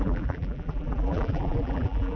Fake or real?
fake